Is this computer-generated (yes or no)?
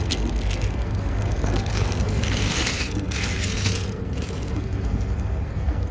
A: yes